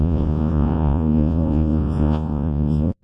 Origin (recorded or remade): remade